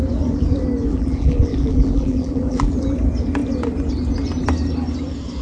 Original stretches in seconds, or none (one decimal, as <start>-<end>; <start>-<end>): 0.0-0.9; 2.7-5.4